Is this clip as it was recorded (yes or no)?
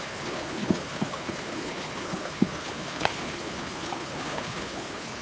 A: no